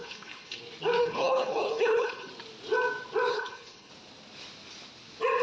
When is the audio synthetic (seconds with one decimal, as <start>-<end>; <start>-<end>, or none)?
0.0-0.6; 1.0-2.3; 3.3-3.9